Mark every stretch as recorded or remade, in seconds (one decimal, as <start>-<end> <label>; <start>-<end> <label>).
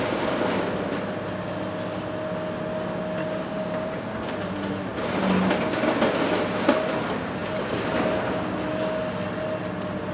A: 0.0-3.2 recorded; 3.2-4.1 remade; 4.1-10.1 recorded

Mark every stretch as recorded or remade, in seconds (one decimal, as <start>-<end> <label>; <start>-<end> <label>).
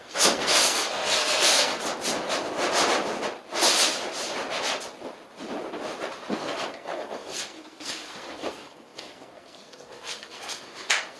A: 0.0-1.8 remade; 1.8-6.3 recorded; 6.3-11.2 remade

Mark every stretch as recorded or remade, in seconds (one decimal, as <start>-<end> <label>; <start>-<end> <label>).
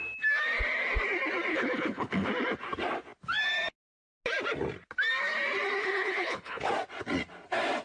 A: 0.0-1.5 recorded; 1.5-2.3 remade; 2.3-5.8 recorded; 5.8-6.7 remade; 6.7-7.8 recorded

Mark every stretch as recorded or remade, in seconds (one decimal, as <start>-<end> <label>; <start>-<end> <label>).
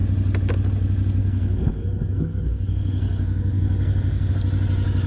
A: 0.0-1.2 recorded; 1.2-4.3 remade; 4.3-5.1 recorded